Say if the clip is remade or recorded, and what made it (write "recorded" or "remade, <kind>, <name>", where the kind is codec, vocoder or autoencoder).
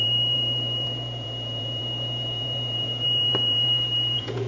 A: remade, vocoder, Vocos